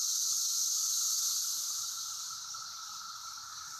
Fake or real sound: real